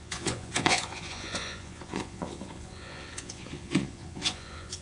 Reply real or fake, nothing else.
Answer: fake